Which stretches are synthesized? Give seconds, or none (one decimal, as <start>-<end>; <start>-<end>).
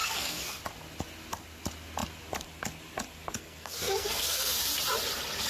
0.0-0.6; 3.3-4.6